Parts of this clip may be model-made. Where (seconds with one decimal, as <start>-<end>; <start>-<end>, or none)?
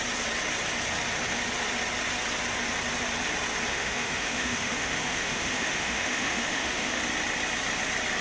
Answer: 3.7-7.0